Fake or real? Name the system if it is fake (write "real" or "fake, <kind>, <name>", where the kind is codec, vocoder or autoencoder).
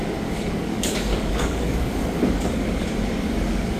fake, codec, DAC